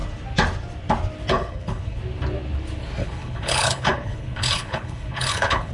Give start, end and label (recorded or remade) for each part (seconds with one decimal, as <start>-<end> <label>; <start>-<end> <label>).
0.0-1.3 recorded; 1.3-2.0 remade; 2.0-3.0 recorded; 3.0-5.7 remade